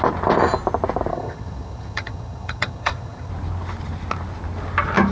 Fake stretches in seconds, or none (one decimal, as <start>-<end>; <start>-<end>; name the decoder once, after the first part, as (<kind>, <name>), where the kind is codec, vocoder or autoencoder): 1.1-3.3 (vocoder, HiFi-GAN)